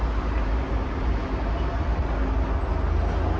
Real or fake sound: real